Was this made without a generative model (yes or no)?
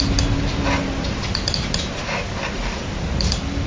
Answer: yes